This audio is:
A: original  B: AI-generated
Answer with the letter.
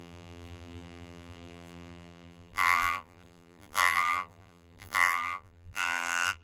B